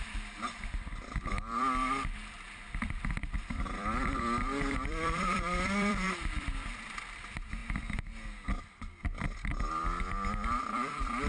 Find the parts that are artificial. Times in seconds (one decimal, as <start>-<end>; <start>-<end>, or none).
0.0-7.6; 8.6-11.3